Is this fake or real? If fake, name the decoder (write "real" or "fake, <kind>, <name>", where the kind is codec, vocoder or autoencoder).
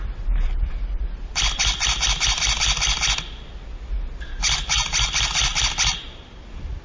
real